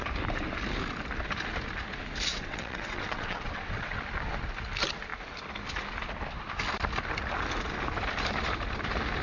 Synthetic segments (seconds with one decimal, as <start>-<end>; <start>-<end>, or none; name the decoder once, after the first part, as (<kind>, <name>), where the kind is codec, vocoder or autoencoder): 2.3-4.0 (vocoder, WaveNeXt)